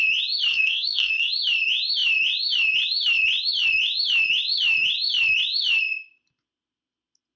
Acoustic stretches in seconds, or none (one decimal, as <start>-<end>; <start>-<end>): 0.0-0.5; 1.3-7.4